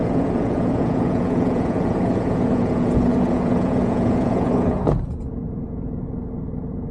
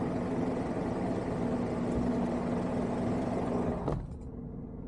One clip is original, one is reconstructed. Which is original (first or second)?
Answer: second